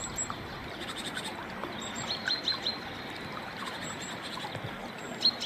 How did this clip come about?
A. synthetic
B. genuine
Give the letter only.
B